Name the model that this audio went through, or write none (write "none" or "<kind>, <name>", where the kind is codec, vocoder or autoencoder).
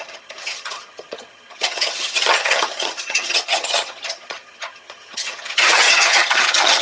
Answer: vocoder, HiFi-GAN